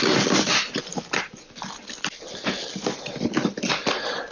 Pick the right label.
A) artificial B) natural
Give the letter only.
B